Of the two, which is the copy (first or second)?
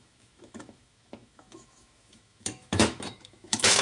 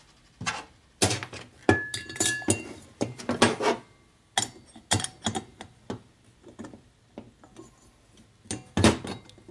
first